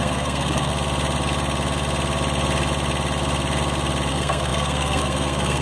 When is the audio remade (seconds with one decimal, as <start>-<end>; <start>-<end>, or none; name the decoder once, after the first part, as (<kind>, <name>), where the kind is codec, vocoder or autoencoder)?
0.0-0.7 (codec, SNAC); 4.1-5.6